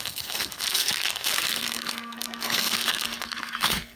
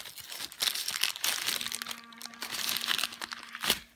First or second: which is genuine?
second